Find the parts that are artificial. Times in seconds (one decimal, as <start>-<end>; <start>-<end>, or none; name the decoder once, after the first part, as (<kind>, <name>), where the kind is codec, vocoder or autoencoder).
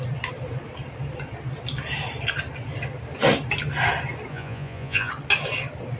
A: 4.3-5.1 (vocoder, Vocos)